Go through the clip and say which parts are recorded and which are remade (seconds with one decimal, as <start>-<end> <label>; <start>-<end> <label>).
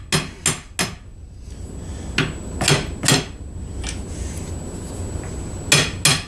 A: 0.0-6.3 recorded